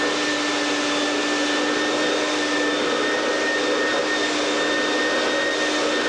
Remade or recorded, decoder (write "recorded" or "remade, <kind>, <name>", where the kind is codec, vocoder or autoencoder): recorded